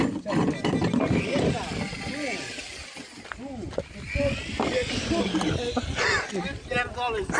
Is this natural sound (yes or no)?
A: yes